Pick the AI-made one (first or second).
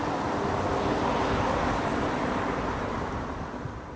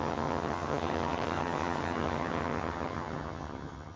second